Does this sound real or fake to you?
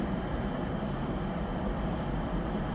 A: real